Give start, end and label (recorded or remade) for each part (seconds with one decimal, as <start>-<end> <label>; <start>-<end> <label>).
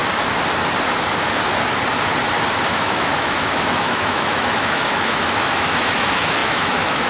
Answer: 0.0-2.6 recorded; 2.6-7.1 remade